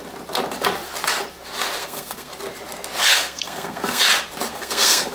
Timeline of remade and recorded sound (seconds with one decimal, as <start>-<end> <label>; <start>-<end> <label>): 0.0-1.8 recorded; 1.8-2.3 remade; 2.3-3.0 recorded; 3.0-4.0 remade; 4.0-4.5 recorded; 4.5-5.1 remade